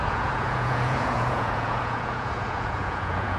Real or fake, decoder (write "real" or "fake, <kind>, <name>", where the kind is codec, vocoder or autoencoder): fake, vocoder, Vocos